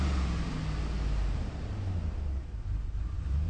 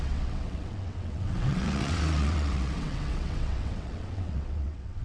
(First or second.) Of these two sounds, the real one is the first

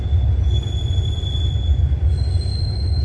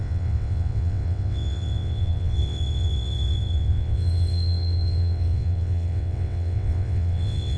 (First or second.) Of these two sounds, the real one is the first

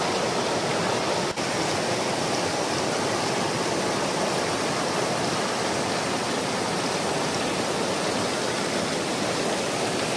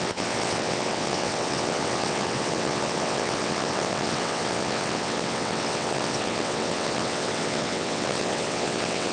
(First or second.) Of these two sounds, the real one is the first